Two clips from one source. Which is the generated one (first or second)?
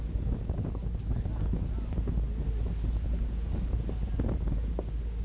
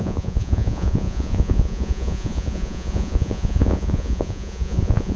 second